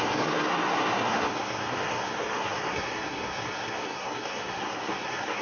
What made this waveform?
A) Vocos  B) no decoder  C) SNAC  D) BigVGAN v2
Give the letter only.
C